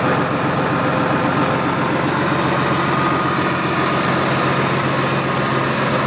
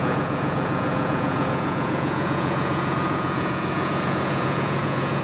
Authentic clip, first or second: first